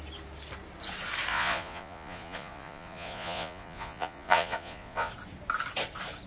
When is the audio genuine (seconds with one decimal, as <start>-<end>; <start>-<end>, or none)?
0.0-1.3; 5.1-6.3